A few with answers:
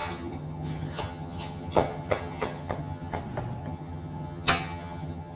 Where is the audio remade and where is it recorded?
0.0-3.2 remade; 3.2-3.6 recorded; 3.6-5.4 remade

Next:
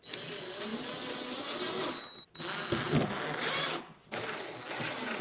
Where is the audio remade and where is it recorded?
0.0-5.2 recorded

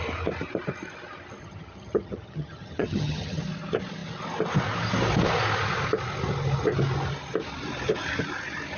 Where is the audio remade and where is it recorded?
0.0-1.4 recorded; 1.4-3.4 remade; 3.4-8.8 recorded

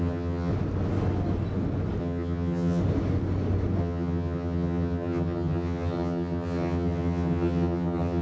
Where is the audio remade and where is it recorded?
0.0-0.5 remade; 0.5-2.0 recorded; 2.0-2.8 remade; 2.8-3.8 recorded; 3.8-8.2 remade